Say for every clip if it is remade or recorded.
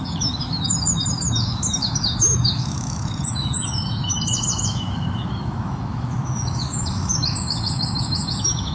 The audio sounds remade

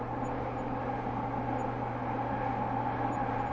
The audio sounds recorded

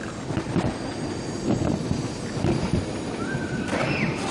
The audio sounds recorded